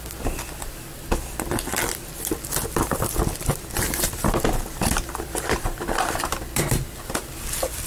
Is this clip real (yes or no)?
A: no